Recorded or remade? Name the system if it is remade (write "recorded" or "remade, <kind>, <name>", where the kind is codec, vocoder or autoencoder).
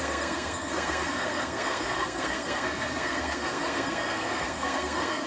remade, codec, SNAC